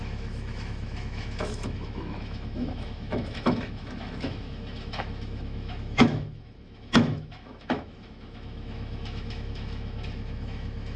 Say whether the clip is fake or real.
fake